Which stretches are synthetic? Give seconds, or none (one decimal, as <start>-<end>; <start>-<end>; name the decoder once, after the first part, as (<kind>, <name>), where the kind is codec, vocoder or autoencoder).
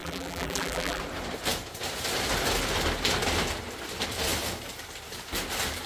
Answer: 0.0-1.0 (vocoder, BigVGAN v2)